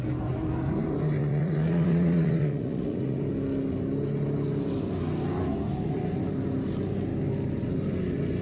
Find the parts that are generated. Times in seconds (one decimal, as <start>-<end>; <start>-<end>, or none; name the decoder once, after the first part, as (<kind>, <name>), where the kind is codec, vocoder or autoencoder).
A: 1.2-3.2 (vocoder, Vocos)